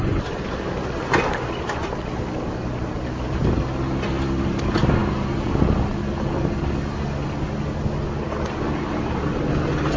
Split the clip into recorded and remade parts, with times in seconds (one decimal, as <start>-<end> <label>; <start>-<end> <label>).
0.0-10.0 recorded